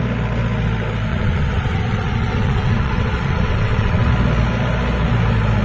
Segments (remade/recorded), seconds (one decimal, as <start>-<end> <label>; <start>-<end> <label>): 0.0-1.1 recorded; 1.1-4.1 remade; 4.1-5.6 recorded